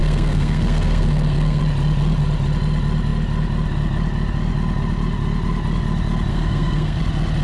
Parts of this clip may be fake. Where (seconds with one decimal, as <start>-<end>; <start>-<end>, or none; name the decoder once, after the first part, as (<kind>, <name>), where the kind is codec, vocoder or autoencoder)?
0.0-1.6 (codec, SNAC); 6.3-7.0